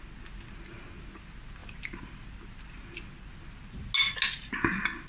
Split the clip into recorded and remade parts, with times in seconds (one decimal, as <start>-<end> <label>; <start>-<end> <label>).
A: 0.0-5.1 recorded